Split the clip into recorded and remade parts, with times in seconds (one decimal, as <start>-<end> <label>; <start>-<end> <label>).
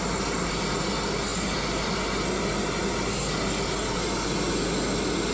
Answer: 0.0-5.3 recorded